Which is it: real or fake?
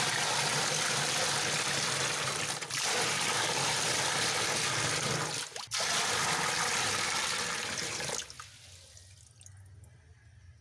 real